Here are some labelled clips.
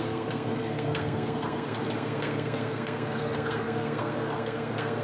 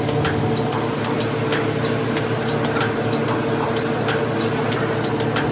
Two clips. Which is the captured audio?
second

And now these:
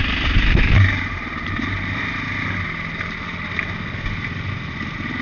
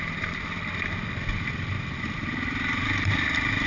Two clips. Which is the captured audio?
first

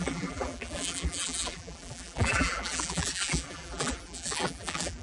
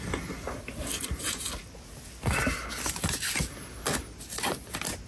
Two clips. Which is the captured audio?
second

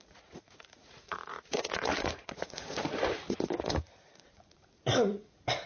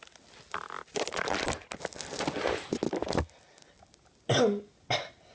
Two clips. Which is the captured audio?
second